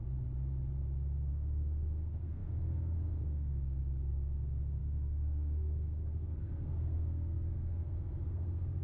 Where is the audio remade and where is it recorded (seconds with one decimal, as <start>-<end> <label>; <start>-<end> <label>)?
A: 0.0-1.3 recorded; 1.3-8.8 remade